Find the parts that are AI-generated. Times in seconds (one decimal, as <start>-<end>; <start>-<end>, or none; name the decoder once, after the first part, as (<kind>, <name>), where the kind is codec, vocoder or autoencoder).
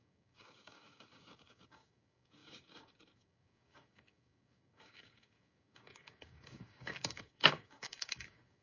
0.0-8.6 (codec, DAC)